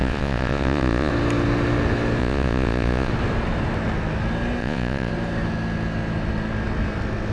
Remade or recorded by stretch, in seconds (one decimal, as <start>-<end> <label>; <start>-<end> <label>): 0.0-1.1 remade; 1.1-2.2 recorded; 2.2-3.1 remade; 3.1-4.6 recorded; 4.6-5.1 remade; 5.1-7.3 recorded